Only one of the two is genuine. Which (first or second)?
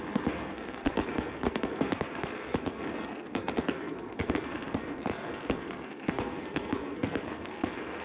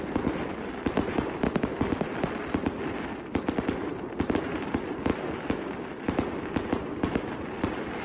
second